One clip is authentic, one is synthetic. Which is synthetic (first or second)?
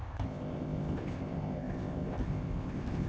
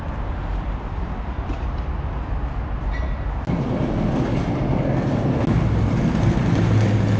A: first